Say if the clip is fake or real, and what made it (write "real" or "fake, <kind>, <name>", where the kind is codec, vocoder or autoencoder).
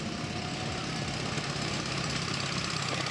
real